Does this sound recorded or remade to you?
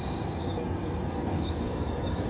remade